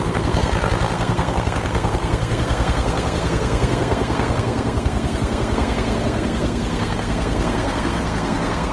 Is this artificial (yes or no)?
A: yes